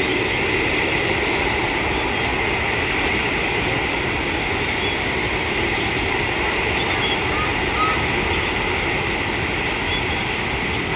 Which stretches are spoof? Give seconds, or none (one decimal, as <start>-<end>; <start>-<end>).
none